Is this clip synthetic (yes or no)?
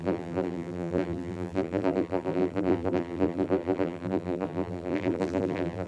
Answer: yes